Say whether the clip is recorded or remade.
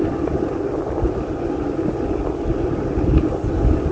recorded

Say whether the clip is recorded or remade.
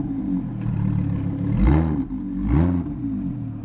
recorded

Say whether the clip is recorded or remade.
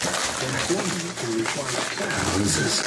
recorded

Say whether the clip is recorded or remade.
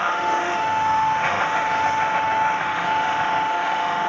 remade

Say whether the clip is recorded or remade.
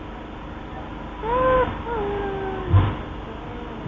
recorded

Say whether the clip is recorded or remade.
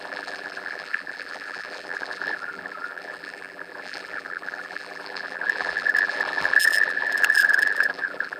remade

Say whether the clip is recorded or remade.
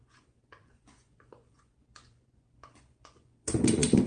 remade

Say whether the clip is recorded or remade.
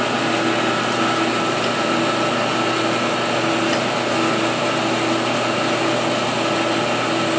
recorded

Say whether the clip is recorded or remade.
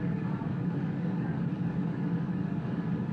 remade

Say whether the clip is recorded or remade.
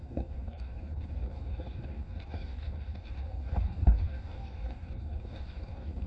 remade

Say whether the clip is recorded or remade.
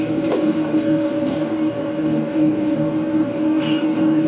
remade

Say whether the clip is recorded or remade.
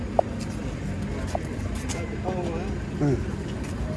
recorded